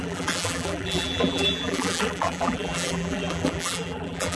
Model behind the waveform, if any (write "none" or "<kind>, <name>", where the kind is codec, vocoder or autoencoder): vocoder, BigVGAN v2